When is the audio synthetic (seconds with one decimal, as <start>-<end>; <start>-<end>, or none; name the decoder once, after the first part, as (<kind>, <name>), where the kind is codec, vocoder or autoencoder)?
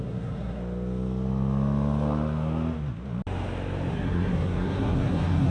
0.0-0.6 (codec, SNAC); 3.9-5.5